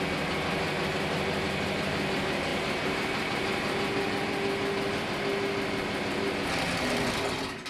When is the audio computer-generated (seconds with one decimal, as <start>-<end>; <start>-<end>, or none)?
none